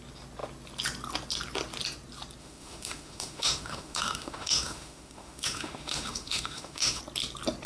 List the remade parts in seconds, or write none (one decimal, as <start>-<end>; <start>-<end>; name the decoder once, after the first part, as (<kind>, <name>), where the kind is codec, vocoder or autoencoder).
2.4-7.0 (autoencoder, DAC-VAE)